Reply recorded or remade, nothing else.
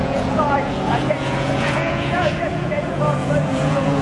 remade